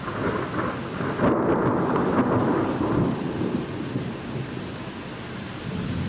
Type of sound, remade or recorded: recorded